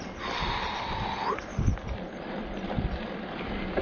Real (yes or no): yes